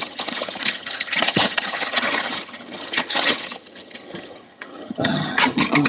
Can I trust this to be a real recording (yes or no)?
no